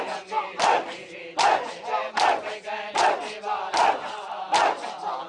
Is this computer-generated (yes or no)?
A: no